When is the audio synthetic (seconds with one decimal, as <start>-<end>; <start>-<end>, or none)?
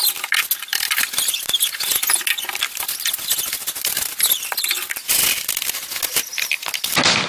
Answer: 1.5-2.2